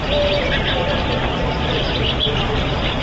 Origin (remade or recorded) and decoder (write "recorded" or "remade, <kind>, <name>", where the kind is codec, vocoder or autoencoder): recorded